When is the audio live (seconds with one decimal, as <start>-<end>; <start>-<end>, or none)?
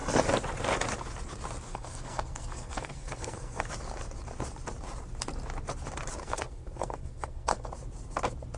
0.0-1.7; 3.7-6.2; 7.7-8.6